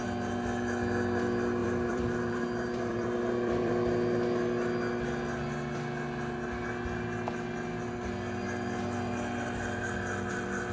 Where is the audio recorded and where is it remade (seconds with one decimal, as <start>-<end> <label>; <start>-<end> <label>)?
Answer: 0.0-1.6 recorded; 1.6-3.7 remade; 3.7-10.7 recorded